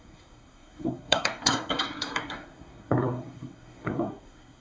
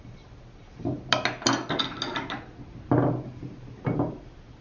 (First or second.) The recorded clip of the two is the second